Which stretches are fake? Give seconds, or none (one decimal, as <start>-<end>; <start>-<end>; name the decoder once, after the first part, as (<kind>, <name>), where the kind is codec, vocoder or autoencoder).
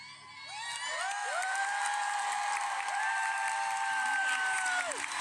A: 1.2-4.3 (vocoder, BigVGAN v2)